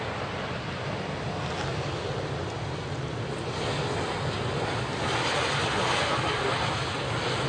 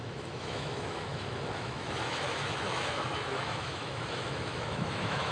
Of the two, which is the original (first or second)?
first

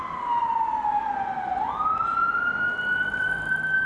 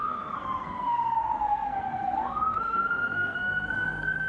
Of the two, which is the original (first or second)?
first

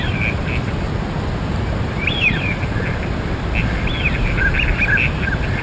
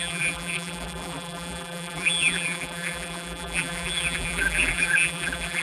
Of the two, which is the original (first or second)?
first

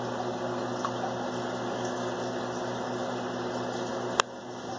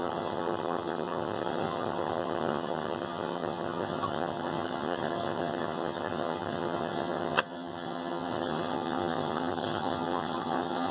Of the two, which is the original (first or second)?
first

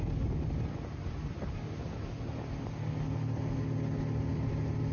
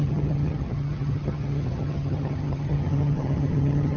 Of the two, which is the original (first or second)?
first